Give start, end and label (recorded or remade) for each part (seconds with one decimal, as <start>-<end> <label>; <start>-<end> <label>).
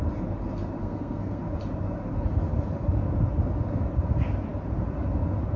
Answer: 0.0-0.8 recorded; 0.8-1.4 remade; 1.4-5.6 recorded